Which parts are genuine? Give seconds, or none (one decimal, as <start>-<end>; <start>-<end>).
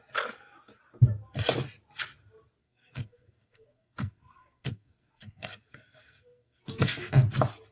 0.0-2.6; 7.1-7.7